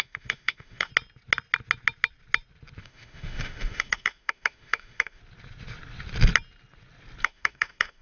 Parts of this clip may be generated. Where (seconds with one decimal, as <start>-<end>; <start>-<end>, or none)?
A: 0.0-0.9; 2.8-5.2; 7.2-8.0